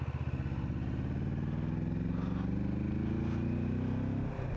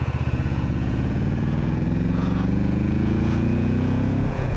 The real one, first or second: first